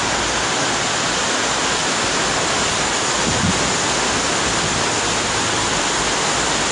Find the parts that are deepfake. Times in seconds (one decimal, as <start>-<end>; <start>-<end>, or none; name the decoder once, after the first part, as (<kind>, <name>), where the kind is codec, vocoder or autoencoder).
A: none

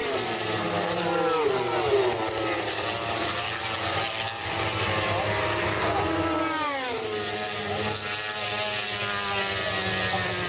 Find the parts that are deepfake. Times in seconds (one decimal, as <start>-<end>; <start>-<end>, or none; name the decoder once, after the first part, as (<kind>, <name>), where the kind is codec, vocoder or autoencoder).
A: none

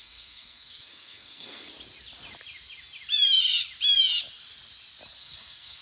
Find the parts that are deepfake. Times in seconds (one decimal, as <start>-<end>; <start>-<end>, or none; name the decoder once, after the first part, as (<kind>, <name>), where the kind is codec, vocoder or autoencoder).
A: 0.0-1.7 (codec, SNAC); 5.2-5.8

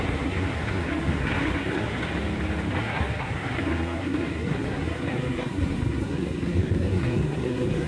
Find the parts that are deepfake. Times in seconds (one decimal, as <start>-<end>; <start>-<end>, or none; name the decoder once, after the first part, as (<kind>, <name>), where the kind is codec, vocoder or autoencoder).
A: 0.0-2.0 (codec, SNAC); 2.8-7.9